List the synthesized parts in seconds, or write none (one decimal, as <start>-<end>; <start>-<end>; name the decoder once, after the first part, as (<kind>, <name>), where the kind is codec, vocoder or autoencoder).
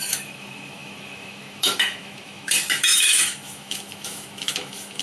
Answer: 0.0-5.0 (autoencoder, DAC-VAE)